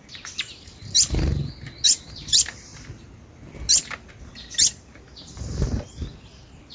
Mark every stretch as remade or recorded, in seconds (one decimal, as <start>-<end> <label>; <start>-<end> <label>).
0.0-1.4 remade; 1.4-2.0 recorded; 2.0-2.7 remade; 2.7-4.8 recorded; 4.8-6.7 remade